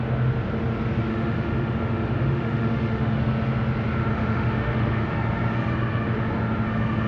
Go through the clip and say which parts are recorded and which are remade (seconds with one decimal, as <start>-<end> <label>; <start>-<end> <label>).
0.0-1.1 recorded; 1.1-3.2 remade; 3.2-4.1 recorded; 4.1-5.1 remade; 5.1-7.1 recorded